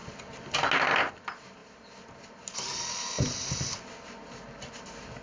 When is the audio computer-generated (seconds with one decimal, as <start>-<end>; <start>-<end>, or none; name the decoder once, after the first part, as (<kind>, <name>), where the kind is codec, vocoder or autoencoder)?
none